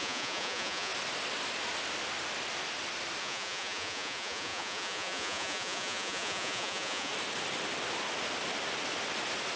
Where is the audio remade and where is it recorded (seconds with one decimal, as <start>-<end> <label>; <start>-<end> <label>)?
0.0-0.9 remade; 0.9-3.2 recorded; 3.2-7.1 remade; 7.1-9.6 recorded